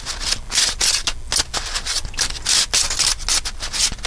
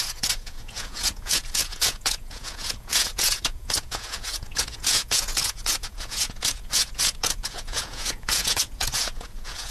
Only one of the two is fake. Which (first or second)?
second